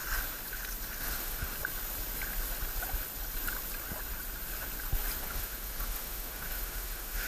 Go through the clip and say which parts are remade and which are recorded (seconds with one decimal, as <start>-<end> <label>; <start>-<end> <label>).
0.0-1.0 recorded; 1.0-1.5 remade; 1.5-5.2 recorded; 5.2-7.3 remade